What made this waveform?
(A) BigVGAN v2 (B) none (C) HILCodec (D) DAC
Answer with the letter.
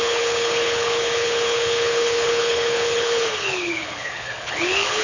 C